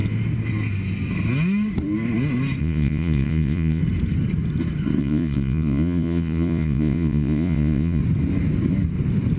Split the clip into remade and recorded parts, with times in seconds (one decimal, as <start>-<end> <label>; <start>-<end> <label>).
0.0-2.6 recorded; 2.6-3.8 remade; 3.8-5.0 recorded; 5.0-8.0 remade; 8.0-9.4 recorded